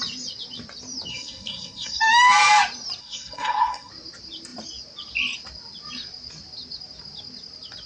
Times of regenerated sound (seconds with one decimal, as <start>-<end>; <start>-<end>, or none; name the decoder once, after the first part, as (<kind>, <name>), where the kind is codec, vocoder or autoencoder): 1.1-2.0 (codec, SNAC); 3.0-3.9